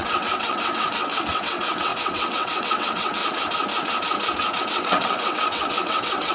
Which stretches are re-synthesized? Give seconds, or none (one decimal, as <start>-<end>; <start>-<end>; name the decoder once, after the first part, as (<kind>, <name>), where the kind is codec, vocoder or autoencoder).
0.0-3.2 (vocoder, WaveNeXt); 4.6-6.3